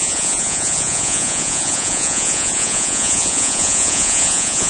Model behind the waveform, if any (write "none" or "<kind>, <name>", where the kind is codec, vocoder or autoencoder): vocoder, Vocos